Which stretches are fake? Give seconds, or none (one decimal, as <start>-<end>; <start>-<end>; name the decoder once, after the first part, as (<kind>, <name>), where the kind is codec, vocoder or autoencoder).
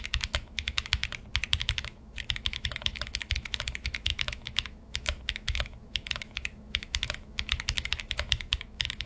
0.0-1.0 (autoencoder, DAC-VAE); 1.6-9.1